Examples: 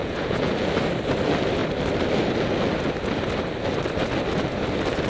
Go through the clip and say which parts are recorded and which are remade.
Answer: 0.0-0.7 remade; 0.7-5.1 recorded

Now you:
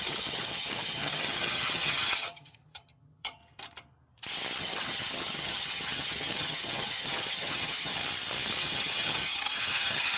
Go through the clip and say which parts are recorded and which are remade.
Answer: 0.0-3.4 remade; 3.4-4.6 recorded; 4.6-8.0 remade; 8.0-8.6 recorded; 8.6-10.2 remade

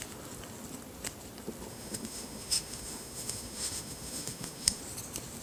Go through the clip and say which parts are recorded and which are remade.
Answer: 0.0-1.7 recorded; 1.7-4.8 remade; 4.8-5.4 recorded

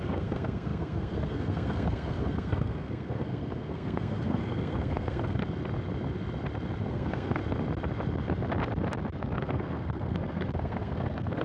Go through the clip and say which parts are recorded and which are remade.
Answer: 0.0-5.4 remade; 5.4-6.9 recorded; 6.9-7.4 remade; 7.4-9.2 recorded; 9.2-11.4 remade

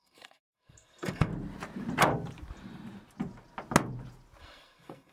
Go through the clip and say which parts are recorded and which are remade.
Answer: 0.0-1.3 remade; 1.3-4.4 recorded; 4.4-5.1 remade

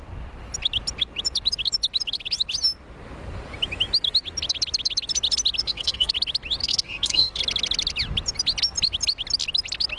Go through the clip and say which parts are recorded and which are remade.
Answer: 0.0-5.6 recorded; 5.6-6.1 remade; 6.1-6.6 recorded; 6.6-7.4 remade; 7.4-10.0 recorded

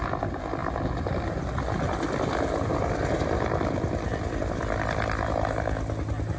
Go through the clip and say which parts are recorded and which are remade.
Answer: 0.0-6.4 recorded

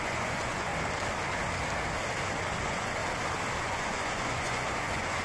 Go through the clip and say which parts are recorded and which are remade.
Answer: 0.0-0.7 remade; 0.7-2.6 recorded; 2.6-3.0 remade; 3.0-3.6 recorded; 3.6-5.2 remade